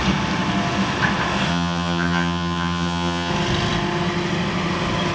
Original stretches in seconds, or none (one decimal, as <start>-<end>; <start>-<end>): 0.0-1.5; 3.3-5.1

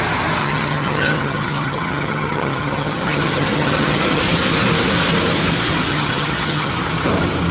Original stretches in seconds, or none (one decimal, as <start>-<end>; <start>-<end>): 0.0-0.4; 4.2-5.9; 6.7-7.5

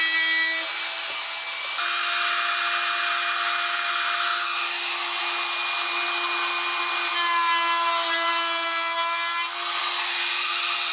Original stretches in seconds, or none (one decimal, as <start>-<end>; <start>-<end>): 0.0-10.9

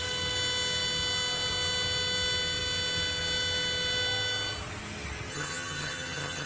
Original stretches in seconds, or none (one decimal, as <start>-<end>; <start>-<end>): 0.0-5.3

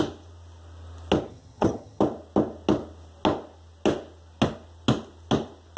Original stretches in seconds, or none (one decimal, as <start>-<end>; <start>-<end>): 0.0-1.3; 2.0-5.8

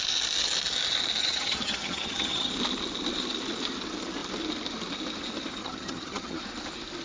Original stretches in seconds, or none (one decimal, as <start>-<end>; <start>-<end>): 0.0-1.2; 2.5-5.6; 6.4-7.0

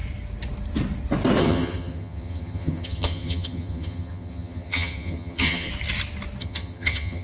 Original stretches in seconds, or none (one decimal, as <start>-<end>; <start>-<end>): 0.0-1.4; 5.7-6.4

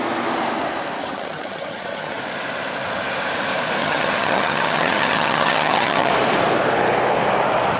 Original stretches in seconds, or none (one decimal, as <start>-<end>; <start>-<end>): 0.0-1.0; 2.2-3.8; 6.1-7.8